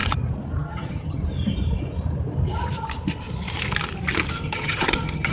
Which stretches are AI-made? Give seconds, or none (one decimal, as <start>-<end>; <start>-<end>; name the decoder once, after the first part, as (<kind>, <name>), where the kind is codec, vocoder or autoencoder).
0.6-1.2 (vocoder, HiFi-GAN); 4.3-5.3